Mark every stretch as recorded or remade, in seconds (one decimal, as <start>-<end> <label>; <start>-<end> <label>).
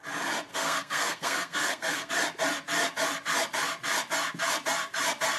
0.0-0.5 recorded; 0.5-2.1 remade; 2.1-5.4 recorded